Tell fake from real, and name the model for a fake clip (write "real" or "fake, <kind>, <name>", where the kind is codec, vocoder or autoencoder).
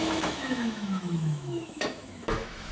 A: fake, autoencoder, DAC-VAE